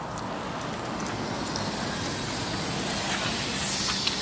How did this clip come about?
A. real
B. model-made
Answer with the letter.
A